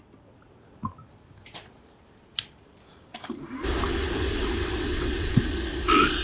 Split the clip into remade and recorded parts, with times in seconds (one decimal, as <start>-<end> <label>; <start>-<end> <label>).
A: 0.0-4.6 recorded; 4.6-5.4 remade; 5.4-6.2 recorded